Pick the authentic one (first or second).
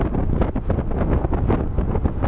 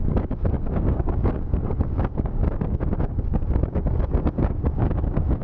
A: first